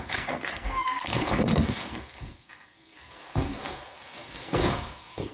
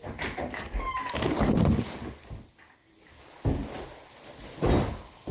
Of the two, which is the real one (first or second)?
second